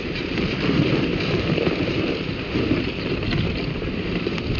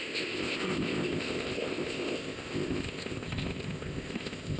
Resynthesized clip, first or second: second